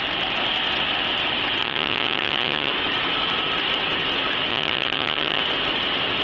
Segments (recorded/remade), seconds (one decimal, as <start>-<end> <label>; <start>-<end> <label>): 0.0-1.6 recorded; 1.6-2.7 remade; 2.7-4.5 recorded; 4.5-5.4 remade; 5.4-6.2 recorded